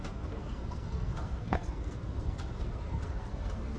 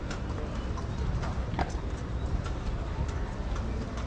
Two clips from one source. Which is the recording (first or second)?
second